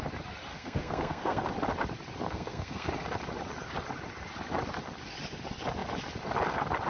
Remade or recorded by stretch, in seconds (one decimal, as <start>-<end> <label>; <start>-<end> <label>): 0.0-0.5 recorded; 0.5-1.4 remade; 1.4-2.2 recorded; 2.2-2.9 remade; 2.9-6.9 recorded